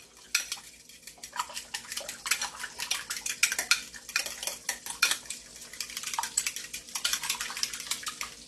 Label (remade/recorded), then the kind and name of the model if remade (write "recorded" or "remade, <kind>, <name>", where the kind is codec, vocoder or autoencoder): recorded